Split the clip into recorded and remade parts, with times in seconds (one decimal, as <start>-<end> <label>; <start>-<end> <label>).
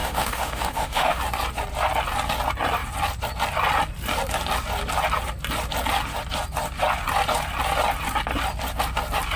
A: 0.0-1.2 remade; 1.2-9.4 recorded